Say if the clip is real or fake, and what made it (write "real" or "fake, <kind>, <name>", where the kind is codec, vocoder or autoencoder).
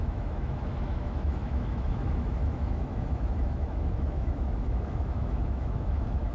fake, autoencoder, DAC-VAE